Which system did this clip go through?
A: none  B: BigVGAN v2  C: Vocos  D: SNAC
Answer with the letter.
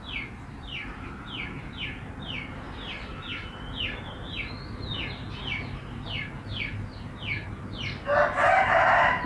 A